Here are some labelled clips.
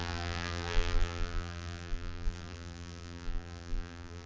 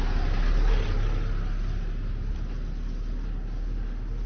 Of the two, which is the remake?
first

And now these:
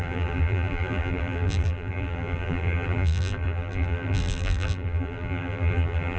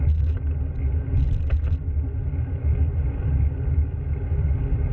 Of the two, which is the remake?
first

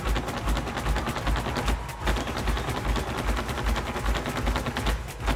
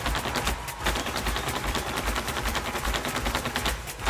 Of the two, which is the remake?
second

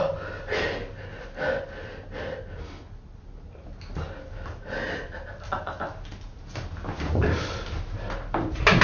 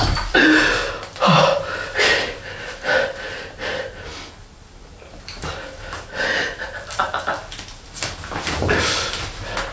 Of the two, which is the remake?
second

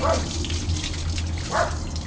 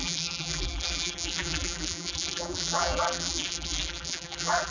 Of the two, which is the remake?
second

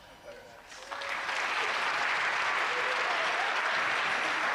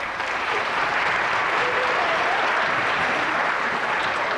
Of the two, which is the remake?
second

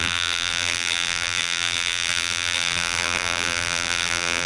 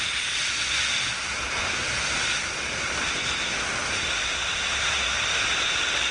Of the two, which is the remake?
first